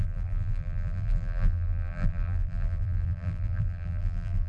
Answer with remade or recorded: remade